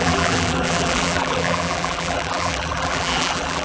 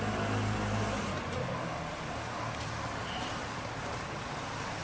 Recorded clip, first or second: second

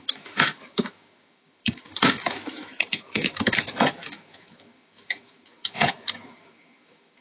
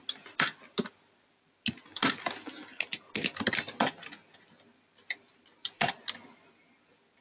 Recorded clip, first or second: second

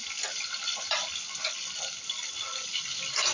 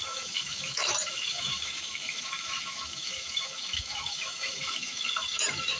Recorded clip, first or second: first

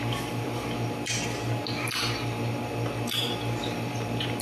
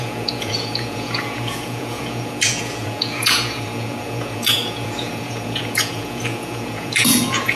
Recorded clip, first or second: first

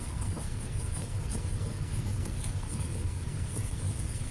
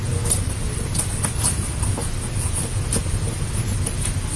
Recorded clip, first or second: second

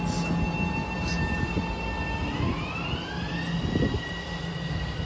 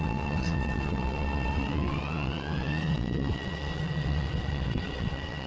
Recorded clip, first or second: first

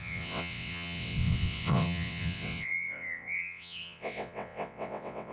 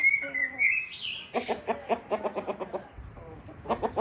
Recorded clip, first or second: second